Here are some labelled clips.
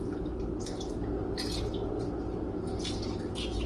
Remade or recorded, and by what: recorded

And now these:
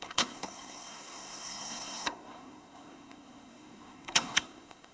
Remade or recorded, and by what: remade, codec, SNAC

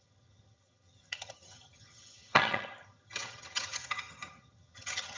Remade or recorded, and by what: remade, vocoder, HiFi-GAN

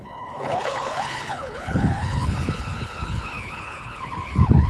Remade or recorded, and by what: remade, codec, HILCodec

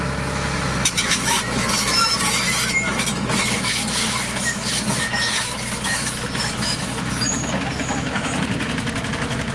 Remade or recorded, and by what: remade, autoencoder, DAC-VAE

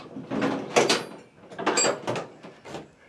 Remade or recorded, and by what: recorded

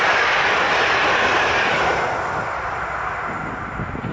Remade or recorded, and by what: recorded